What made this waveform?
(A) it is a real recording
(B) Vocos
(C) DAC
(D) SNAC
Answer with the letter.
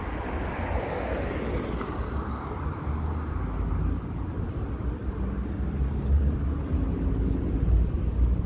A